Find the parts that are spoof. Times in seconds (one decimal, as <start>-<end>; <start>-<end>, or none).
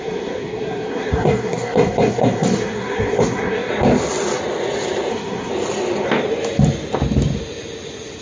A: 0.0-3.7; 5.1-5.5